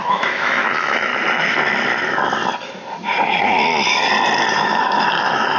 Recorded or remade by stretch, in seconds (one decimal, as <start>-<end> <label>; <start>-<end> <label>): 0.0-1.1 remade; 1.1-4.5 recorded; 4.5-5.6 remade